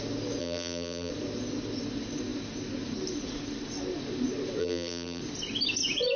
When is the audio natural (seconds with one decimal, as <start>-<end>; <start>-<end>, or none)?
0.0-0.4; 1.1-4.6; 5.2-6.2